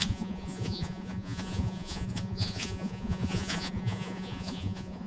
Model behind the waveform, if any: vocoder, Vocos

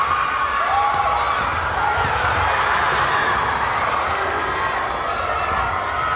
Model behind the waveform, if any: none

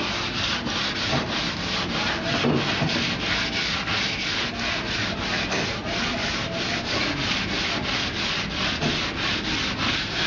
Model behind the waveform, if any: none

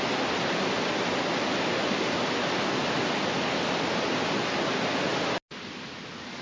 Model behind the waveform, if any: none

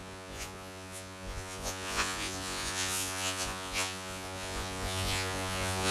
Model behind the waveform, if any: vocoder, Vocos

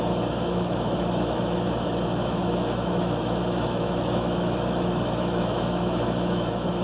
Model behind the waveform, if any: autoencoder, DAC-VAE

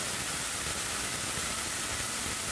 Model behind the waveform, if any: none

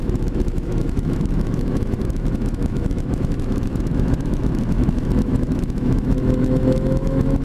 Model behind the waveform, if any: autoencoder, DAC-VAE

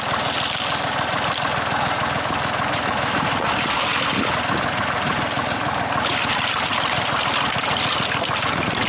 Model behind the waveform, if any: none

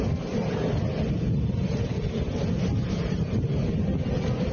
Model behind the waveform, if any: none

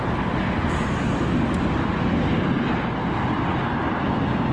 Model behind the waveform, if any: none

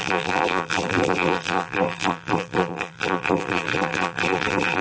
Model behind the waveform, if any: vocoder, BigVGAN v2